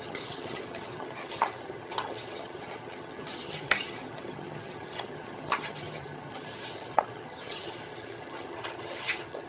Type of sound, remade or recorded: remade